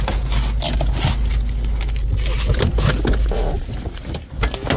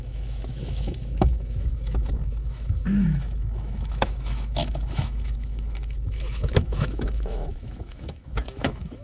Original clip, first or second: first